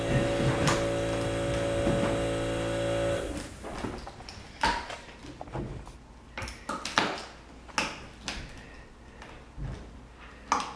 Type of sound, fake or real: real